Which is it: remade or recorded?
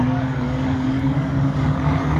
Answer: remade